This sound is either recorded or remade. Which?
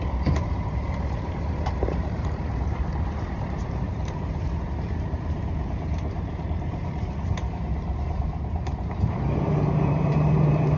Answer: remade